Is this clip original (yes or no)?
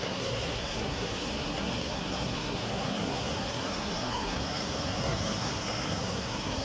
no